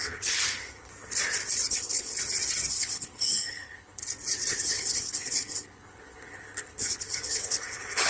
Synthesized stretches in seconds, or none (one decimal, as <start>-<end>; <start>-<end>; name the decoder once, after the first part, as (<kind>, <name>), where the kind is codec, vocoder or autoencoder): 0.0-0.9 (codec, HILCodec); 1.7-2.1; 2.7-4.0; 4.5-8.1